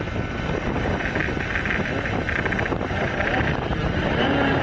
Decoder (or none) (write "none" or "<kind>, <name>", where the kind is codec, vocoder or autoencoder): vocoder, BigVGAN v2